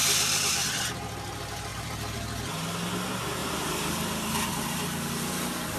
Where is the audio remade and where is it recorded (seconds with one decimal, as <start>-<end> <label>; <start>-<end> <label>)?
0.0-0.7 remade; 0.7-1.7 recorded; 1.7-2.5 remade; 2.5-3.4 recorded; 3.4-4.5 remade; 4.5-5.8 recorded